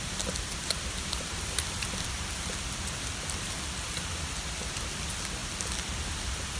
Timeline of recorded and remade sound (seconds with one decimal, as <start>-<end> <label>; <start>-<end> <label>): 0.0-0.6 recorded; 0.6-4.3 remade; 4.3-5.4 recorded; 5.4-5.9 remade; 5.9-6.6 recorded